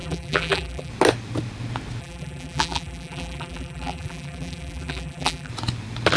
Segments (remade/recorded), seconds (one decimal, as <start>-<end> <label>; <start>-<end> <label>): 0.0-0.9 remade; 0.9-2.0 recorded; 2.0-5.5 remade; 5.5-6.2 recorded